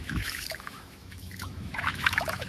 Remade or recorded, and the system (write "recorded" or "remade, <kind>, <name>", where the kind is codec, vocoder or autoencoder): remade, autoencoder, DAC-VAE